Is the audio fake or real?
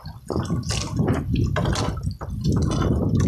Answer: real